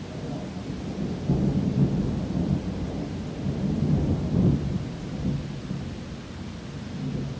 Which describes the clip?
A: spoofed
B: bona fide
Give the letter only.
B